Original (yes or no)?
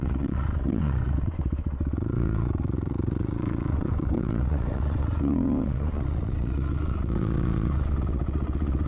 no